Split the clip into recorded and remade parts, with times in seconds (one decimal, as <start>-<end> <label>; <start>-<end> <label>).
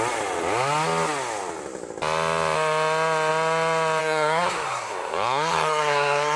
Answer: 0.0-4.0 recorded; 4.0-6.4 remade